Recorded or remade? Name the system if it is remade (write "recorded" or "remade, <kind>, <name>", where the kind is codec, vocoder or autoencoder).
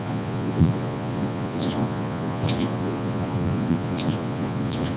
remade, vocoder, Vocos